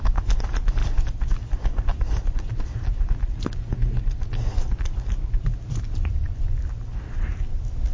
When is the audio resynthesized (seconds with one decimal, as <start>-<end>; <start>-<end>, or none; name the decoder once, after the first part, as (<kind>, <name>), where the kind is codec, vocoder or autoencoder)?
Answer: none